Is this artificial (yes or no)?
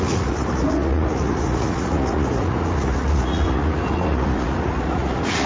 yes